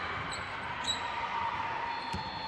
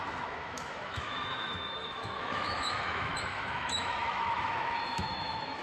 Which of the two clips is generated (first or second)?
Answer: second